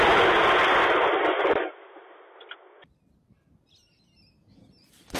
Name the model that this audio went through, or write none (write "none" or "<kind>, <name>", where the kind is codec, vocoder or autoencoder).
none